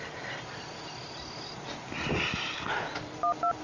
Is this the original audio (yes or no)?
yes